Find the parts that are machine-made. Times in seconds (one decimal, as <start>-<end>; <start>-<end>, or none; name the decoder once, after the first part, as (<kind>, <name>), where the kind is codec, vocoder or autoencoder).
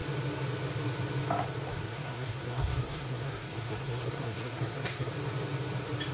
1.7-5.1 (codec, SNAC)